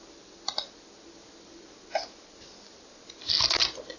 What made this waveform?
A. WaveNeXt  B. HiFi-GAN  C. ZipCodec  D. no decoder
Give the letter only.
D